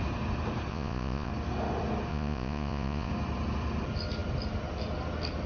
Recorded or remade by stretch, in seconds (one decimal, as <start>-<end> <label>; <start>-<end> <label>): 0.0-0.7 recorded; 0.7-1.3 remade; 1.3-2.1 recorded; 2.1-3.1 remade; 3.1-5.5 recorded